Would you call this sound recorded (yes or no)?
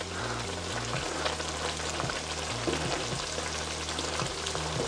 yes